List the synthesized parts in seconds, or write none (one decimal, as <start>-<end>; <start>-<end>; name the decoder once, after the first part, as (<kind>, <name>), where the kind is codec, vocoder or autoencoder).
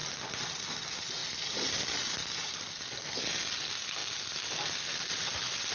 1.2-3.2 (vocoder, BigVGAN v2); 4.0-5.3